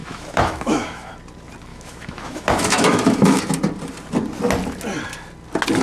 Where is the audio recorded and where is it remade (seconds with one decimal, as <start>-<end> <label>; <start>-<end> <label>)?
0.0-1.1 remade; 1.1-1.7 recorded; 1.7-3.4 remade; 3.4-5.8 recorded